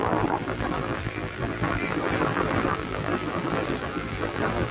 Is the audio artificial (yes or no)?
yes